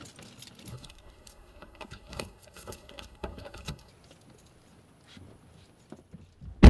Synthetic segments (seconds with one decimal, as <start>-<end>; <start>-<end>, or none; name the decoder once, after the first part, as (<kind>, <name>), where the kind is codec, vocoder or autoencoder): 0.7-3.9 (codec, SNAC)